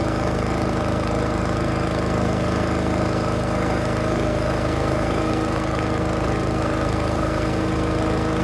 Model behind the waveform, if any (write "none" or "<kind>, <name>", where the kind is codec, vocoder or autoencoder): codec, SNAC